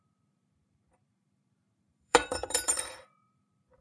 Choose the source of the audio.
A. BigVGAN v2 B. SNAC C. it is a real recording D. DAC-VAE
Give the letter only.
A